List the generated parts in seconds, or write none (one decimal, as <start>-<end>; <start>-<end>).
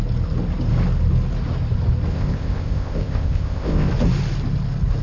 2.1-3.9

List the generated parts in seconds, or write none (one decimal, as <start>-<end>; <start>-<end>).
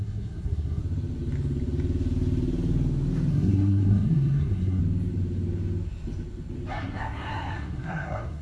0.0-0.8; 3.3-4.8; 6.7-8.4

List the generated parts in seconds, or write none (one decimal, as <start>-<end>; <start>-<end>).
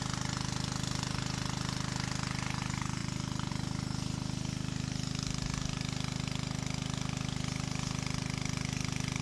none